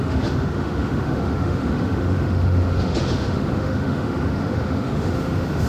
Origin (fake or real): fake